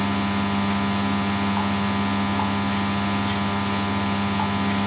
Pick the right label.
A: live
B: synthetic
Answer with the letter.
A